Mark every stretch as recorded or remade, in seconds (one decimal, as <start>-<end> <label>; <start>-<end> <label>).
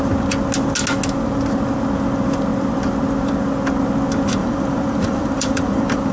0.0-4.4 recorded; 4.4-6.1 remade